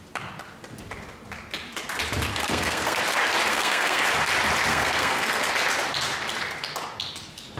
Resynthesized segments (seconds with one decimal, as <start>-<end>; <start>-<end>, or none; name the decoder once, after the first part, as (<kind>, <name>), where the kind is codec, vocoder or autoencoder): 2.3-3.0 (codec, SNAC); 3.5-4.0; 4.7-5.5

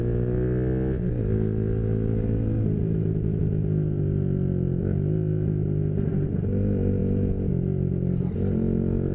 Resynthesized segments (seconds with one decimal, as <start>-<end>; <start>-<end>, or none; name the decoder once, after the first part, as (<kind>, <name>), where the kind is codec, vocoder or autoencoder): none